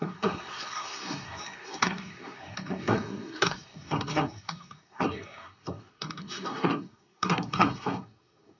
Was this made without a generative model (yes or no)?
no